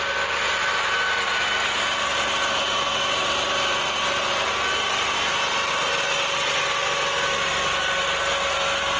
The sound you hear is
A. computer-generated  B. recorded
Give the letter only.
B